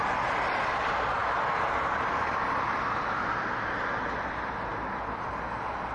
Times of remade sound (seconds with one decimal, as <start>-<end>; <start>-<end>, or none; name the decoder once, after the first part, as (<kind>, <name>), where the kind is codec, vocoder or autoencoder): none